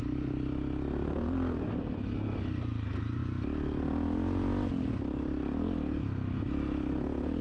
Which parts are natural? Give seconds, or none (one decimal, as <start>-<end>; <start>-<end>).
0.0-7.4